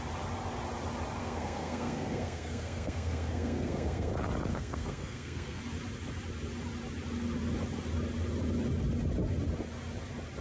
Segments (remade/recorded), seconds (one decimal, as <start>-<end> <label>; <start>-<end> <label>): 0.0-1.2 recorded; 1.2-4.1 remade; 4.1-4.5 recorded; 4.5-5.6 remade; 5.6-10.4 recorded